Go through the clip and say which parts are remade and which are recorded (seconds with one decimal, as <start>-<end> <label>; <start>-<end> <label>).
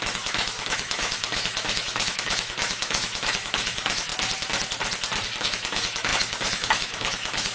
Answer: 0.0-4.1 remade; 4.1-5.4 recorded; 5.4-7.5 remade